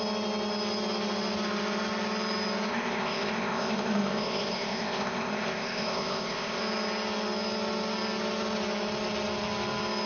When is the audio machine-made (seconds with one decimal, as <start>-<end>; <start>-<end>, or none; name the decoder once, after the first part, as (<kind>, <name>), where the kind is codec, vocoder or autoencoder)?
2.7-6.6 (codec, ZipCodec)